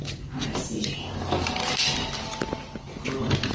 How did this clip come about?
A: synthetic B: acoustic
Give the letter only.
B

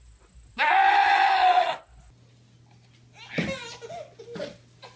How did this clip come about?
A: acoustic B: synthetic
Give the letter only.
A